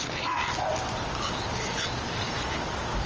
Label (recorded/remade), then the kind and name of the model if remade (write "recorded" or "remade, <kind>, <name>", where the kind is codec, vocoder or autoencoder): recorded